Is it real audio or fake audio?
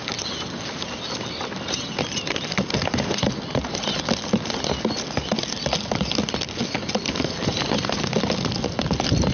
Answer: real